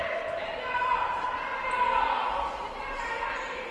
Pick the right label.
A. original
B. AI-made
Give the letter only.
A